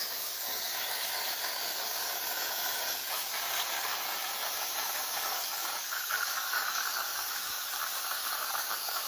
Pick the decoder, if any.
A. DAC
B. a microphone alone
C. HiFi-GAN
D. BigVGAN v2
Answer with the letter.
A